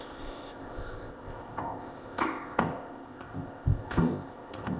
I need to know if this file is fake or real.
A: fake